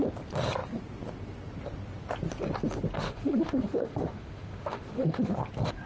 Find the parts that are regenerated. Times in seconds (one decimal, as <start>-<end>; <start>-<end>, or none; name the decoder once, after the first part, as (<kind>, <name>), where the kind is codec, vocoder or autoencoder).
3.1-5.3 (autoencoder, DAC-VAE)